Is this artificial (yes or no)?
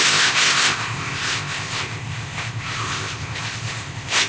yes